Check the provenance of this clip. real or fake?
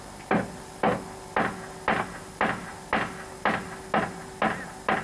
real